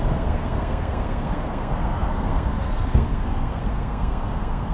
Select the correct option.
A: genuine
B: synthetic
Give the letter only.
B